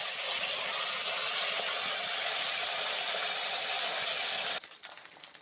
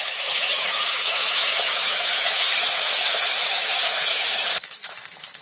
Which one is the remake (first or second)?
second